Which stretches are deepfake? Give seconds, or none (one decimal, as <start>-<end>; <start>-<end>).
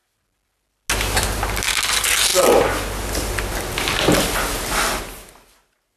none